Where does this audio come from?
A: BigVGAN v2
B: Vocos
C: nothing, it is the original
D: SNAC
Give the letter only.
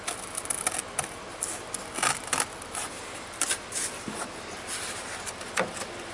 C